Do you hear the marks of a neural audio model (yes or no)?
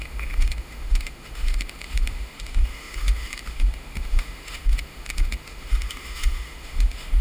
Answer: yes